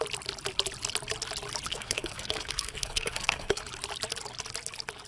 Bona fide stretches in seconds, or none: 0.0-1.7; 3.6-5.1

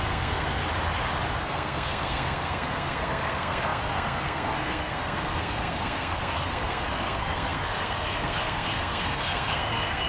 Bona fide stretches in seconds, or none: 0.6-1.4

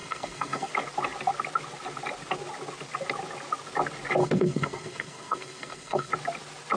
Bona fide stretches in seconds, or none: 0.7-4.2; 6.1-6.8

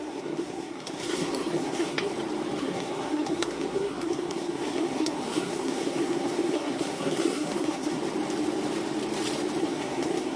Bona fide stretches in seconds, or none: 2.1-2.6; 8.0-9.6